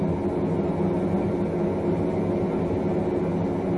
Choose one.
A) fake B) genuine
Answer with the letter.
B